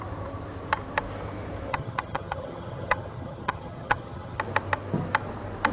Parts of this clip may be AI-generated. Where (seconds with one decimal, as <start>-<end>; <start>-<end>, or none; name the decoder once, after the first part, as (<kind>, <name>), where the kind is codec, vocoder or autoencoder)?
1.7-4.4 (vocoder, HiFi-GAN)